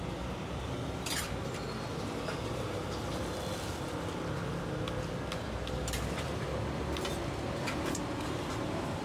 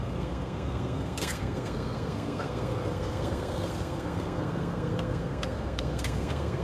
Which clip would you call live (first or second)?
first